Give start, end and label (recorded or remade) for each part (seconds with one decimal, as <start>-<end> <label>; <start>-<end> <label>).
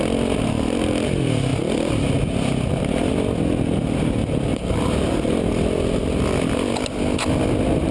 0.0-4.5 recorded; 4.5-5.5 remade; 5.5-7.9 recorded